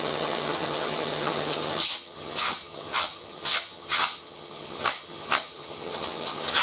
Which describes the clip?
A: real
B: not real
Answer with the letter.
B